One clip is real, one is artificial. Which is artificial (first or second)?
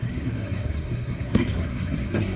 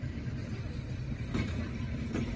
first